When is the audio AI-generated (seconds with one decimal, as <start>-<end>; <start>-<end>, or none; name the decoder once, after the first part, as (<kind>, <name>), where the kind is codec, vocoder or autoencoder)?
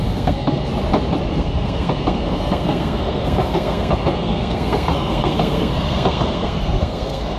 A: 0.0-0.7 (codec, SNAC); 1.3-7.4